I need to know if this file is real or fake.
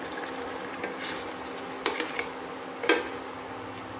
real